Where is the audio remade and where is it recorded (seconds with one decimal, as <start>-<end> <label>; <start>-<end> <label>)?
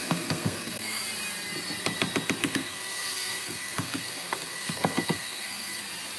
0.0-1.0 remade; 1.0-2.4 recorded; 2.4-5.8 remade; 5.8-6.2 recorded